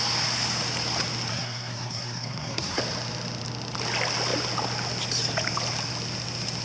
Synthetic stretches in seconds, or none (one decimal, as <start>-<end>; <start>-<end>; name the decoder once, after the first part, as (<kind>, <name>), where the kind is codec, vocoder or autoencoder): 1.3-2.8 (codec, SNAC)

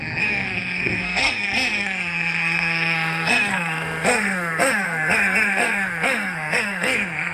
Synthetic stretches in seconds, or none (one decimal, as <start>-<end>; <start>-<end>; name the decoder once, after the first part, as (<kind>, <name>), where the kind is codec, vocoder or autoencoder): 0.0-7.3 (codec, SNAC)

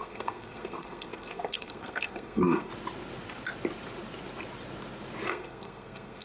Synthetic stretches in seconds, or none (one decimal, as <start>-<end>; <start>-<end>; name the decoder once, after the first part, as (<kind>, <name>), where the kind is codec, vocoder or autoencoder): 0.0-2.7 (codec, SNAC); 5.3-6.2

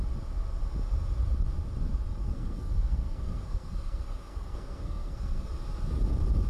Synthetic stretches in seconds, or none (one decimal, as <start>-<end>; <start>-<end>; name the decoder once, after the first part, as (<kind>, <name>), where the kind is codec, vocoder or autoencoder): 2.2-5.5 (codec, SNAC)

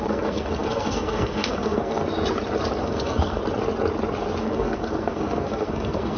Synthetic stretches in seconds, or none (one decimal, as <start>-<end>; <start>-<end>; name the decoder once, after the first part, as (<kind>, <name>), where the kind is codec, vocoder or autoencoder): 0.0-2.0 (codec, SNAC); 2.8-3.4; 4.4-6.2

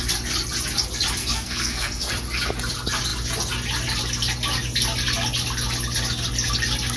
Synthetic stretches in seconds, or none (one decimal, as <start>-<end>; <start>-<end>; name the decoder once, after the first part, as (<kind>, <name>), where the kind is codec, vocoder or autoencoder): 1.2-2.1 (codec, SNAC)

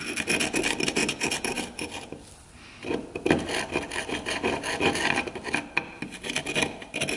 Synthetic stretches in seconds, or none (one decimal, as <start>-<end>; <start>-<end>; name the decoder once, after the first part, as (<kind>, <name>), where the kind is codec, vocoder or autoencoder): none

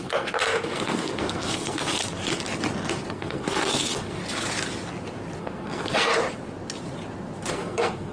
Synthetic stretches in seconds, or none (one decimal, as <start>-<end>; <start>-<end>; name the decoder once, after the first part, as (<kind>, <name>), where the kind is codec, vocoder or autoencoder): 0.0-2.0 (codec, SNAC); 3.1-4.2; 5.4-6.1; 7.5-8.1